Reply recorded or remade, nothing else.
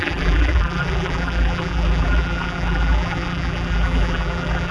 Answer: remade